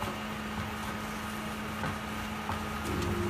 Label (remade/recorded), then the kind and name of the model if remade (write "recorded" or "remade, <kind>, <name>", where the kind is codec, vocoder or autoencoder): recorded